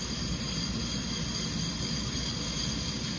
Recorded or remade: recorded